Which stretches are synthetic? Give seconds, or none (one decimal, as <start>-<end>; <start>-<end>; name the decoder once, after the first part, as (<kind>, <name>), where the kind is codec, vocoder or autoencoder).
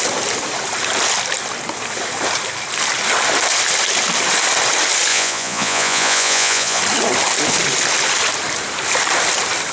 5.1-6.8 (vocoder, Vocos)